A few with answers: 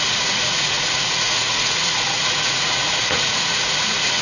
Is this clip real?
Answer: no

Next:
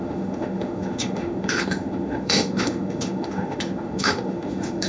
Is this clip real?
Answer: no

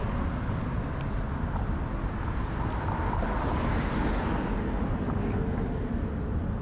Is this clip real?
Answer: yes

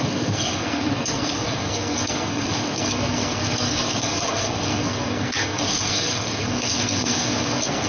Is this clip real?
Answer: no